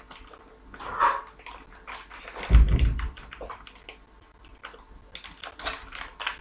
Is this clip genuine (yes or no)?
yes